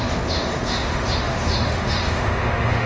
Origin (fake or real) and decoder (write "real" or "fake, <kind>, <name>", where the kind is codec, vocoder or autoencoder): fake, autoencoder, DAC-VAE